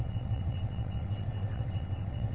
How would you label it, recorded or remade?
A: remade